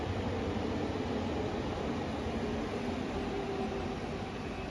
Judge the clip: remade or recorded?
recorded